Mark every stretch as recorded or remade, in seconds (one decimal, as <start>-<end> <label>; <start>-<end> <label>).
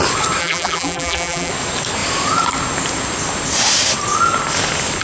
0.0-0.4 recorded; 0.4-1.5 remade; 1.5-5.0 recorded